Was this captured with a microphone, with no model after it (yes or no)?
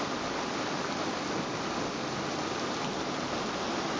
yes